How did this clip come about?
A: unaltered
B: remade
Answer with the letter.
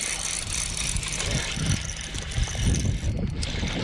A